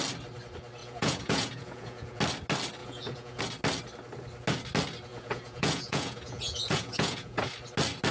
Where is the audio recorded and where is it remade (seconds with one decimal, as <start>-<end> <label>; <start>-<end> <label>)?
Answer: 0.0-0.8 recorded; 0.8-2.2 remade; 2.2-2.8 recorded; 2.8-3.4 remade; 3.4-5.1 recorded; 5.1-7.5 remade; 7.5-8.1 recorded